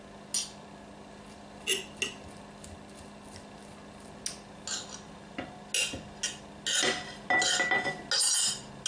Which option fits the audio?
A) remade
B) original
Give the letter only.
B